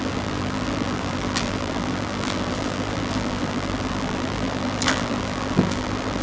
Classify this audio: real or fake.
fake